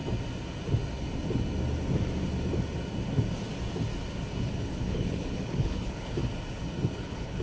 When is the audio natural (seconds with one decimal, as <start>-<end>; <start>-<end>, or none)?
0.0-4.4; 6.2-6.9